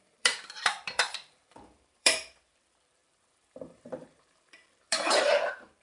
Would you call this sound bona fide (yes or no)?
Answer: no